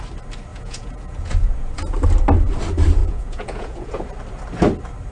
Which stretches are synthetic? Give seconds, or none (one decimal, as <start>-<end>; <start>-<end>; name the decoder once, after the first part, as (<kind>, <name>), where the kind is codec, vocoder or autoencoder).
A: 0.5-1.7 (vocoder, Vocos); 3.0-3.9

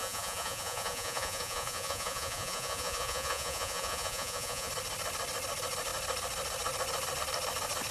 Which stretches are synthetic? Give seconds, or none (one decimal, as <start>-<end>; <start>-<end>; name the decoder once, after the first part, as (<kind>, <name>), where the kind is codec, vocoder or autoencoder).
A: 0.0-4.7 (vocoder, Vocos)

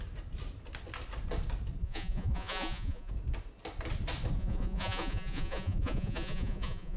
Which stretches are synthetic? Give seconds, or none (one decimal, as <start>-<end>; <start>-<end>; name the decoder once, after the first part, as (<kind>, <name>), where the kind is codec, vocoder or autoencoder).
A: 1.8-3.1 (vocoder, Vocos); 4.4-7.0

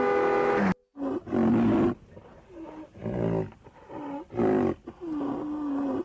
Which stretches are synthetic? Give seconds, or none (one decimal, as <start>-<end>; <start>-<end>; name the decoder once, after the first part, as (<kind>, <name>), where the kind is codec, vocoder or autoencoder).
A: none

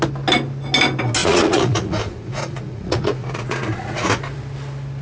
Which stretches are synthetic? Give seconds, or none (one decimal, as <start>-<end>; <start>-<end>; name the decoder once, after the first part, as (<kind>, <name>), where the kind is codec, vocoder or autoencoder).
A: 1.2-4.2 (vocoder, Vocos)

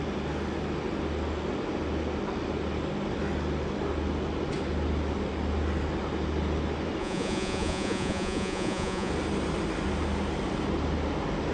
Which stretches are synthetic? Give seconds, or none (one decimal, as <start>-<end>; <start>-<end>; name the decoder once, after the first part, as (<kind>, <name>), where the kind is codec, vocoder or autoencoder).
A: 7.0-9.1 (vocoder, Vocos)

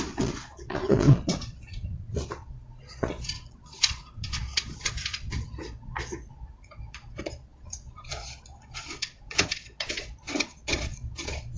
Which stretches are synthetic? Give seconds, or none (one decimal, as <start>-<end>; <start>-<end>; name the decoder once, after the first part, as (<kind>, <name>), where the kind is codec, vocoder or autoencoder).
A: 0.0-11.6 (vocoder, Vocos)

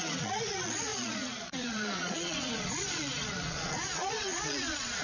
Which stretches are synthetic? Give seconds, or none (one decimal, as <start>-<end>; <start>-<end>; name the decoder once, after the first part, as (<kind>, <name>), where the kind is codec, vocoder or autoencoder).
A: 0.0-5.0 (vocoder, Vocos)